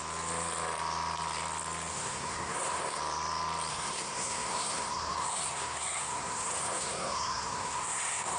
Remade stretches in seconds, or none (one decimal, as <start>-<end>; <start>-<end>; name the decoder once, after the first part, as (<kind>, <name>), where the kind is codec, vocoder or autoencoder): 1.9-3.0 (codec, SNAC); 3.7-8.4